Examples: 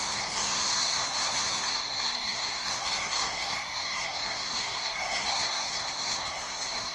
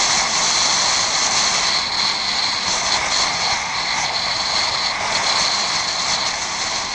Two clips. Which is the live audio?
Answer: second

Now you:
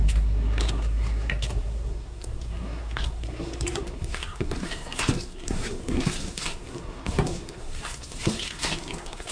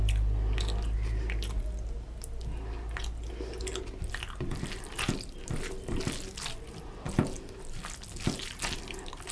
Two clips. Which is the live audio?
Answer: second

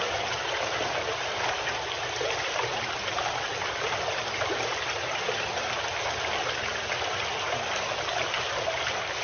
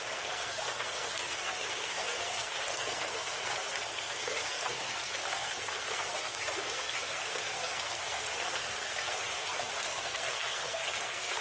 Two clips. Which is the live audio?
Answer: first